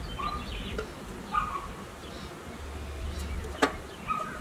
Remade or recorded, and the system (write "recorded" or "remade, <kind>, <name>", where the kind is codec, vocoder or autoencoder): recorded